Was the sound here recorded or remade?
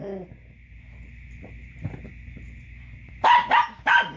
recorded